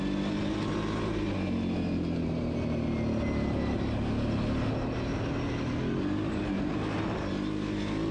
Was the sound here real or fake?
real